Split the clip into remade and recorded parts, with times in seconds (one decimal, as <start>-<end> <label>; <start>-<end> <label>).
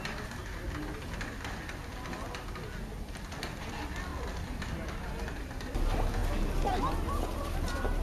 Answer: 0.0-8.0 recorded